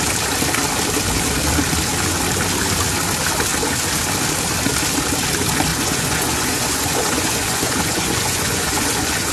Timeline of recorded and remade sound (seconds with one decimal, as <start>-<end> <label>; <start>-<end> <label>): 0.0-5.7 recorded; 5.7-9.3 remade

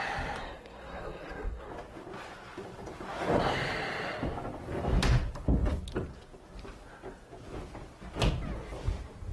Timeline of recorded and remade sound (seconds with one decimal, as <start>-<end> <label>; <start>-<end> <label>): 0.0-0.4 recorded; 0.4-1.7 remade; 1.7-9.3 recorded

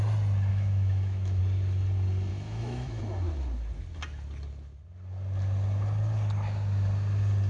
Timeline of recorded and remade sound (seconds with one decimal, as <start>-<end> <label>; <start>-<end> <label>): 0.0-0.5 recorded; 0.5-1.4 remade; 1.4-2.3 recorded; 2.3-3.0 remade; 3.0-7.5 recorded

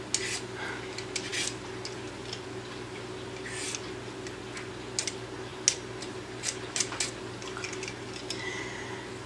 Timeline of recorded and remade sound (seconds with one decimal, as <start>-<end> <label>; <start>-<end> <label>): 0.0-9.3 recorded

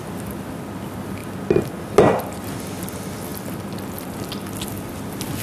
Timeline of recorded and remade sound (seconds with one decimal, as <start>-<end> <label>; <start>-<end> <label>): 0.0-5.4 recorded

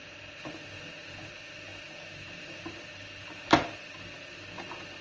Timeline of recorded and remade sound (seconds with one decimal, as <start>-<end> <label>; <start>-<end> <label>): 0.0-5.0 recorded

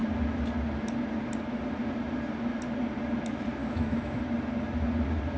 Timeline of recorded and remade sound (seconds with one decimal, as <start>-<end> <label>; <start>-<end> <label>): 0.0-3.6 recorded; 3.6-4.2 remade; 4.2-5.4 recorded

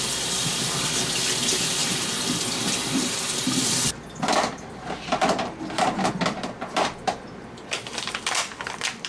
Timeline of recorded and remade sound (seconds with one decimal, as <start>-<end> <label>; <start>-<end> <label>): 0.0-9.1 remade